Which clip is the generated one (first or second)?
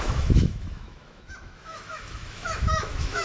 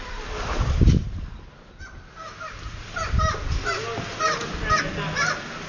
first